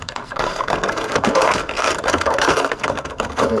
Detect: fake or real fake